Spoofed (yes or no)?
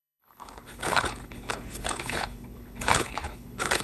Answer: yes